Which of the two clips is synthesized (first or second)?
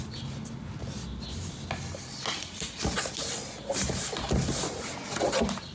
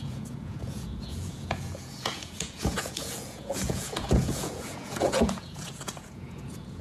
second